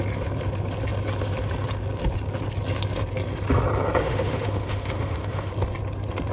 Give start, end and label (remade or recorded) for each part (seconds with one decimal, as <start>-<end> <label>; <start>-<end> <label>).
0.0-4.0 recorded; 4.0-5.5 remade; 5.5-6.3 recorded